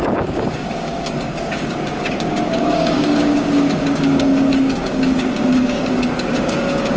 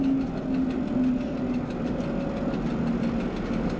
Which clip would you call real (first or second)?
second